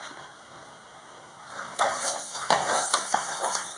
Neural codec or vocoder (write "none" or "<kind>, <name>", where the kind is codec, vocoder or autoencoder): codec, SNAC